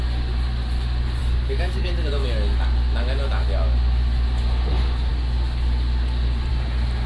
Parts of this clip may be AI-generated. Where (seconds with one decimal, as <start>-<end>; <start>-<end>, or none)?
1.2-1.9